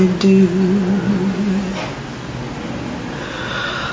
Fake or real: real